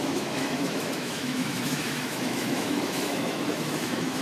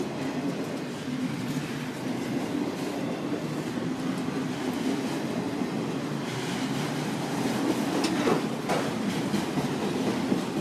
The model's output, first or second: first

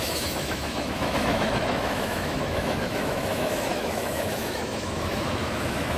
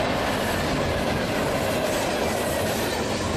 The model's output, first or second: first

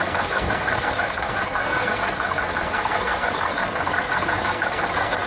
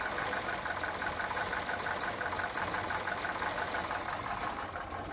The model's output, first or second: first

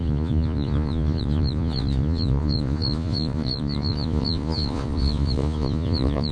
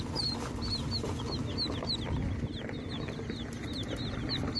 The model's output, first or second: first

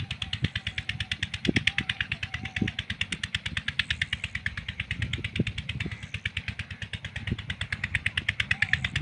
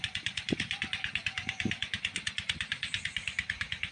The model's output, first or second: second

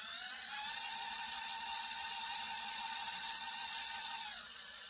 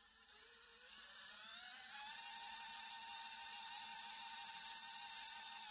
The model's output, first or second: first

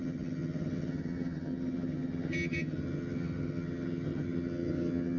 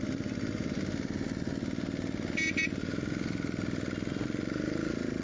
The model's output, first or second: first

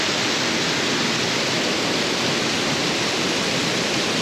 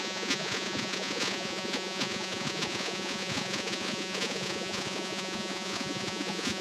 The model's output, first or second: second